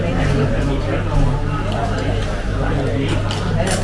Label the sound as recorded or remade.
recorded